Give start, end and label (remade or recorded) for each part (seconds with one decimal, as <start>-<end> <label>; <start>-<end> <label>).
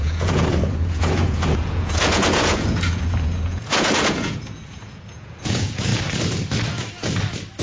0.0-5.9 remade; 5.9-7.6 recorded